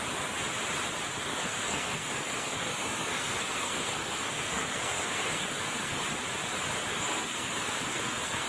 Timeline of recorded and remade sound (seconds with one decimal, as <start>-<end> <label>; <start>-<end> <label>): 0.0-1.2 recorded; 1.2-6.0 remade; 6.0-6.9 recorded; 6.9-8.5 remade